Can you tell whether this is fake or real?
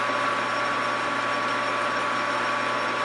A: real